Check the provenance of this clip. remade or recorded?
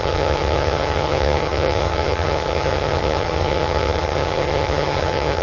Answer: remade